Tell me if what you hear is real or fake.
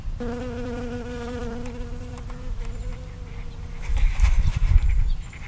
fake